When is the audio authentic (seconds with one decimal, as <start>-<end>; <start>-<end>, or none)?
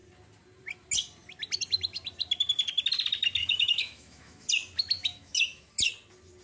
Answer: 0.0-3.4; 4.5-5.1; 5.7-6.4